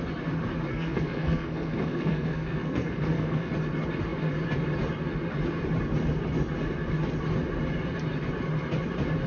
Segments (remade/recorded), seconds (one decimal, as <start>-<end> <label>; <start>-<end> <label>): 0.0-0.7 recorded; 0.7-3.5 remade; 3.5-9.3 recorded